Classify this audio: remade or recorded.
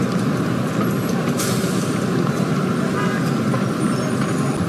recorded